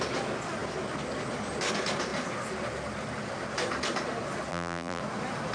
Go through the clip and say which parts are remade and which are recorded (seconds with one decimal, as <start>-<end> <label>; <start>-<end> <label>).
0.0-4.5 recorded; 4.5-5.0 remade; 5.0-5.5 recorded